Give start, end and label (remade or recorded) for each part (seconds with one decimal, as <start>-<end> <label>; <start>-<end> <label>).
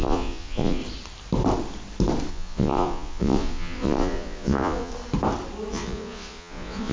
0.0-0.8 remade; 0.8-2.3 recorded; 2.3-4.9 remade; 4.9-5.7 recorded; 5.7-6.9 remade